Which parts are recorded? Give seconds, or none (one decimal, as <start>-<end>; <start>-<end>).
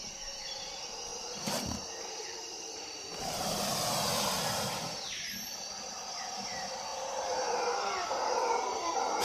0.0-1.1; 3.6-6.9